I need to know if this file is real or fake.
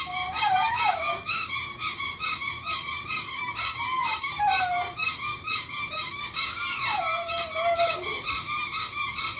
fake